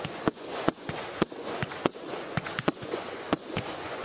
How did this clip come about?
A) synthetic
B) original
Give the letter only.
A